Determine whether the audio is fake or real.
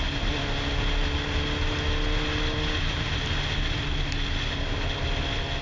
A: real